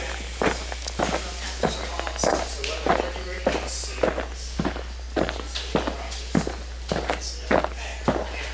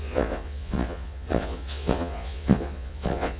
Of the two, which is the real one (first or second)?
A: first